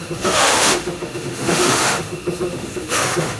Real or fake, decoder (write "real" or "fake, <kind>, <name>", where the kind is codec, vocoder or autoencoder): fake, autoencoder, DAC-VAE